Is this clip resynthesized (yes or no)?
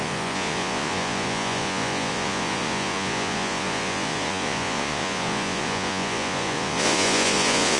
yes